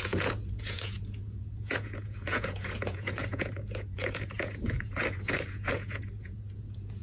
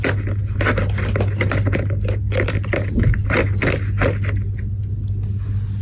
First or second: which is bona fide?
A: second